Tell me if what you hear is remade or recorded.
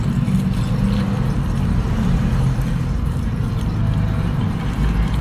recorded